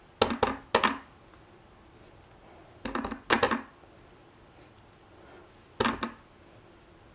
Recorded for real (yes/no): yes